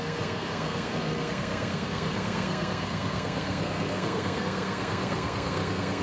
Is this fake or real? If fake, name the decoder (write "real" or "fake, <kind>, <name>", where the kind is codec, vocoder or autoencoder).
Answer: fake, codec, SNAC